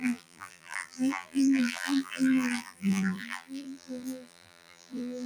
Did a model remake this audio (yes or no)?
yes